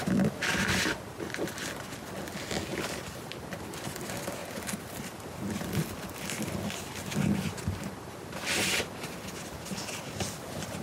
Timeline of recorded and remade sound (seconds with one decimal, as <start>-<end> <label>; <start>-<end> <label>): 0.0-2.7 recorded; 2.7-3.3 remade; 3.3-4.4 recorded; 4.4-6.8 remade; 6.8-10.8 recorded